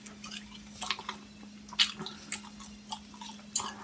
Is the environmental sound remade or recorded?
recorded